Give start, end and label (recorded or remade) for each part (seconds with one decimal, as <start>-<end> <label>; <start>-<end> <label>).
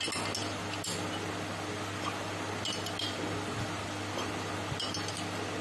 0.0-5.6 recorded